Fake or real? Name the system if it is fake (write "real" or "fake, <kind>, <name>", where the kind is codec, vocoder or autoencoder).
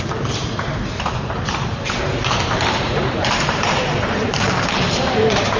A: fake, vocoder, BigVGAN v2